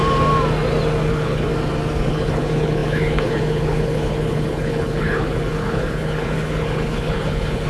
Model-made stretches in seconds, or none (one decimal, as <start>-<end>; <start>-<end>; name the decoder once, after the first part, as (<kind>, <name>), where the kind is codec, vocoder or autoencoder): 1.1-1.5 (codec, HILCodec); 2.1-7.7